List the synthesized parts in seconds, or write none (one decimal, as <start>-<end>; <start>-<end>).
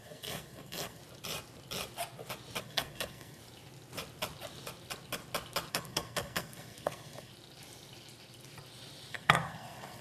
0.0-1.0; 2.6-3.4; 5.7-7.3; 9.1-10.0